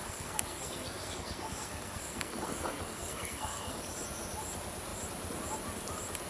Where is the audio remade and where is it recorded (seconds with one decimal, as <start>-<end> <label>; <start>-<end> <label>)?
0.0-3.8 remade; 3.8-6.3 recorded